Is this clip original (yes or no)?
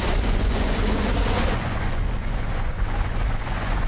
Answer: no